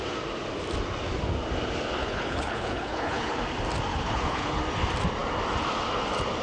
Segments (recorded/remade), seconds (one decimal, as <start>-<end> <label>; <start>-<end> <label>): 0.0-2.0 recorded; 2.0-3.4 remade; 3.4-3.9 recorded; 3.9-4.6 remade; 4.6-6.4 recorded